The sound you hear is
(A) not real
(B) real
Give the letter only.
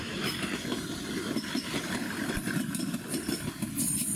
B